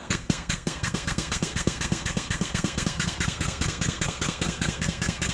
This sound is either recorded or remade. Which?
remade